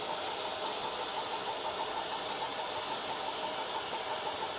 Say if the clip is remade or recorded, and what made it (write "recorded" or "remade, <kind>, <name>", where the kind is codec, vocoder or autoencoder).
recorded